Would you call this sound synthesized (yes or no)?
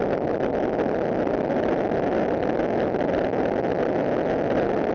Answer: no